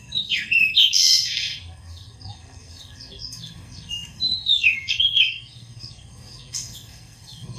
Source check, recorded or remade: remade